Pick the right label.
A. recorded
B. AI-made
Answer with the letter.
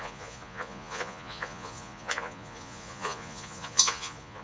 B